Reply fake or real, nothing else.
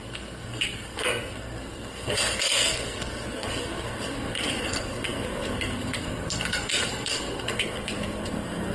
fake